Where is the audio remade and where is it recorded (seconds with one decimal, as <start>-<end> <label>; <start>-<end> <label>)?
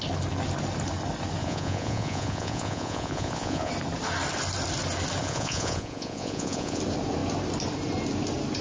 0.0-1.4 recorded; 1.4-3.7 remade; 3.7-5.2 recorded; 5.2-6.8 remade; 6.8-8.6 recorded